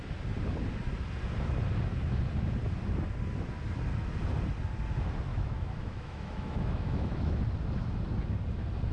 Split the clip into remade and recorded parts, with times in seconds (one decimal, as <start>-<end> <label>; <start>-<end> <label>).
0.0-5.3 recorded; 5.3-7.4 remade; 7.4-8.9 recorded

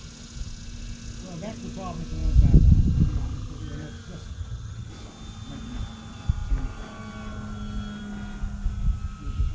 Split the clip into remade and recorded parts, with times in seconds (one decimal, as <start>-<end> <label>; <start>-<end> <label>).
0.0-4.3 recorded; 4.3-4.9 remade; 4.9-9.5 recorded

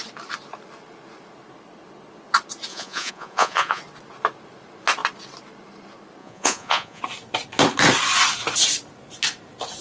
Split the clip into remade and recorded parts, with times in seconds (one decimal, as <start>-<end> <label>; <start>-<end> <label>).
0.0-2.7 recorded; 2.7-3.8 remade; 3.8-6.2 recorded; 6.2-7.0 remade; 7.0-9.8 recorded

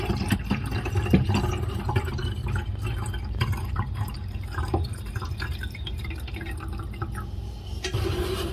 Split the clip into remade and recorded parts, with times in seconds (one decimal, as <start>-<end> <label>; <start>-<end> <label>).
0.0-2.4 remade; 2.4-3.4 recorded; 3.4-8.5 remade

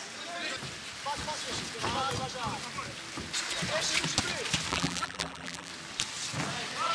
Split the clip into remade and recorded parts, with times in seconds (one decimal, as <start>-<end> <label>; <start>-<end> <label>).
0.0-4.7 recorded; 4.7-5.7 remade; 5.7-6.9 recorded

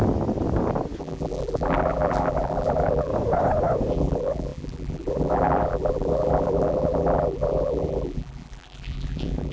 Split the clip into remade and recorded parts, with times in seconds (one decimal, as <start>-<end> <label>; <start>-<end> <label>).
0.0-1.0 recorded; 1.0-3.1 remade; 3.1-3.9 recorded; 3.9-9.5 remade

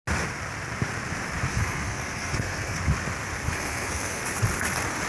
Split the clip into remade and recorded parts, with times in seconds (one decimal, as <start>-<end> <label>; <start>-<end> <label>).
0.0-1.5 recorded; 1.5-2.8 remade; 2.8-3.5 recorded; 3.5-4.2 remade; 4.2-5.1 recorded